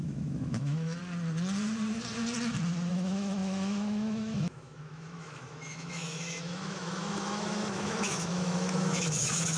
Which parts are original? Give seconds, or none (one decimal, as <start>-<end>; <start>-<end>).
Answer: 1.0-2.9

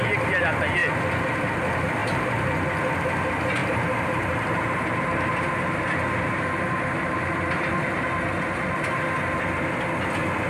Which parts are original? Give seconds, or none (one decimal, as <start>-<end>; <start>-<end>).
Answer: 0.0-2.0; 2.7-3.6; 8.1-10.5

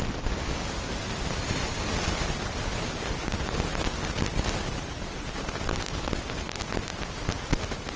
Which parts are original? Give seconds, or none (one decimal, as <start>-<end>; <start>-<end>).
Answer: 0.0-1.4; 1.9-8.0

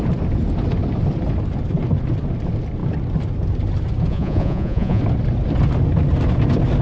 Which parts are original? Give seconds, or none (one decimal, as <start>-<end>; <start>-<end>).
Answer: 0.0-4.1; 5.0-6.8

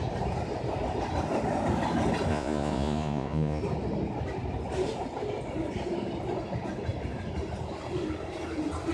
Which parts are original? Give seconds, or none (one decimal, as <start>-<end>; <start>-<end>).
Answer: 0.0-2.3; 3.6-8.9